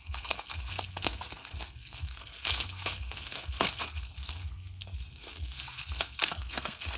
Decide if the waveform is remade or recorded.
remade